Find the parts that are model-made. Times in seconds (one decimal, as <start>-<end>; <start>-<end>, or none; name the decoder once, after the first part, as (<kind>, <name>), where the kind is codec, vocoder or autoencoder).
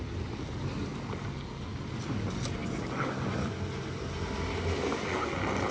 none